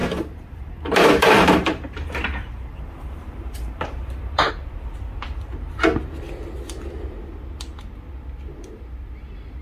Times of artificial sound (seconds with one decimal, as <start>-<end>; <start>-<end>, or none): 0.0-4.5